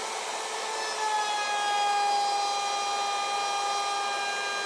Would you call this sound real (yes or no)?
yes